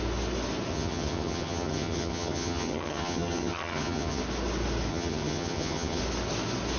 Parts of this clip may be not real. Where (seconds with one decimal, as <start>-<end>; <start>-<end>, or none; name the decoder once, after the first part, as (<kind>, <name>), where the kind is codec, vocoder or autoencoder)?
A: 0.7-4.2 (vocoder, HiFi-GAN); 4.9-6.0